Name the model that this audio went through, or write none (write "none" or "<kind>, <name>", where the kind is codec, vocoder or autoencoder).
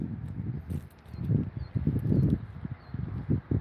none